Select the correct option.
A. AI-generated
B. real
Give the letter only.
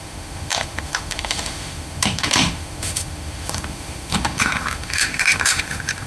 A